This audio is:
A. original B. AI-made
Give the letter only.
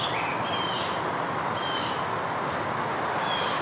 A